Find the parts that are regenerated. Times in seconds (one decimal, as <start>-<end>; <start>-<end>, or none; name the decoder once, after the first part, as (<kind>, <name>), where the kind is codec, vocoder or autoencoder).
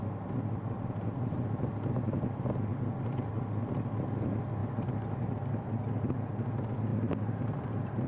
6.9-8.1 (vocoder, BigVGAN v2)